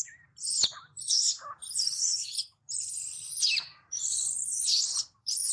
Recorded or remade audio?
remade